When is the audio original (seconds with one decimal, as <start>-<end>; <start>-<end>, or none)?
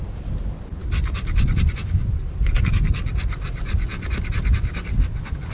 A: 0.0-5.5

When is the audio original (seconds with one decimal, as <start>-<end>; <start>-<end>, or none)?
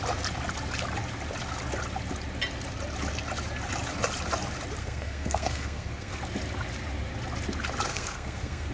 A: 0.0-4.8; 6.2-7.9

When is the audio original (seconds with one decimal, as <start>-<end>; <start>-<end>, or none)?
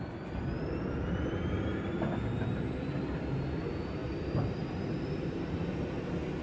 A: none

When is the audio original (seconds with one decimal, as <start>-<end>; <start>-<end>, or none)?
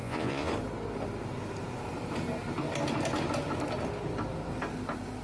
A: 0.5-5.2